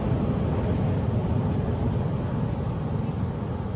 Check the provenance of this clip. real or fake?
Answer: fake